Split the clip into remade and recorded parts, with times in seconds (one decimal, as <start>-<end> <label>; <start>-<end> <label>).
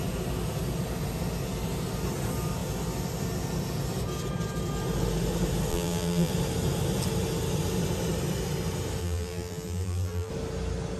0.0-5.7 recorded; 5.7-6.3 remade; 6.3-9.0 recorded; 9.0-10.3 remade; 10.3-11.0 recorded